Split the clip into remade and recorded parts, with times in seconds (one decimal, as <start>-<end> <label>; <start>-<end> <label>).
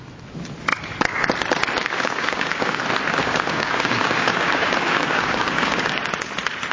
0.0-1.8 recorded; 1.8-2.8 remade; 2.8-3.2 recorded; 3.2-6.1 remade; 6.1-6.7 recorded